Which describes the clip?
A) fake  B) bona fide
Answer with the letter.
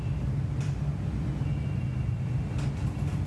B